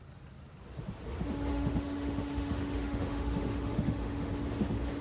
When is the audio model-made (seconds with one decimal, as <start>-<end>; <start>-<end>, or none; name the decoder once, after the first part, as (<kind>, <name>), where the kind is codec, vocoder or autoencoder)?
1.5-4.3 (autoencoder, DAC-VAE)